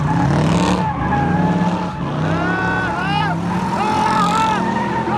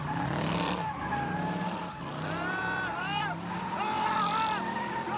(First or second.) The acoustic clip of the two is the first